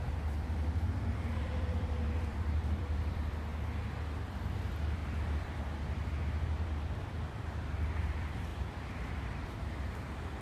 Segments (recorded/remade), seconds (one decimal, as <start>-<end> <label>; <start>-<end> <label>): 0.0-3.5 remade; 3.5-4.3 recorded; 4.3-10.4 remade